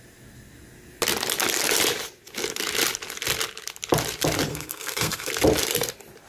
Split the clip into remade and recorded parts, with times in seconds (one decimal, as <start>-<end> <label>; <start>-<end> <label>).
0.0-4.5 recorded; 4.5-5.3 remade; 5.3-6.3 recorded